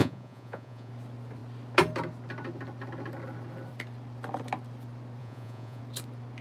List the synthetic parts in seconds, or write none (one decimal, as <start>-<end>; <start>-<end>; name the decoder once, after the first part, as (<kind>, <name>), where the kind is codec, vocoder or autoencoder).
0.0-0.9 (vocoder, Vocos); 5.2-5.8